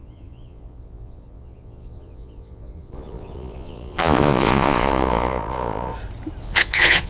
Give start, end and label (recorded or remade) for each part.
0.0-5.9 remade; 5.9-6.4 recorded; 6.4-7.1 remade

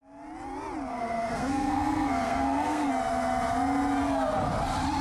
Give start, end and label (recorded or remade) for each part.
0.0-0.9 recorded; 0.9-2.9 remade; 2.9-5.0 recorded

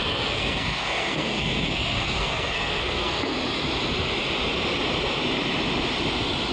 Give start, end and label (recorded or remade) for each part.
0.0-3.3 remade; 3.3-6.5 recorded

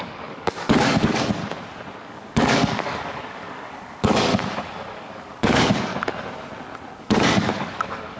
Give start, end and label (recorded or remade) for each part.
0.0-1.4 remade; 1.4-2.0 recorded; 2.0-4.3 remade; 4.3-4.9 recorded; 4.9-5.9 remade; 5.9-7.0 recorded; 7.0-8.2 remade

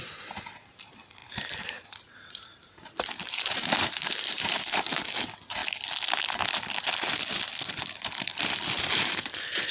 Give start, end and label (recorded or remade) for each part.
0.0-5.6 remade; 5.6-8.8 recorded; 8.8-9.7 remade